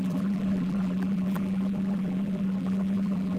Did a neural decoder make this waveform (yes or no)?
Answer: yes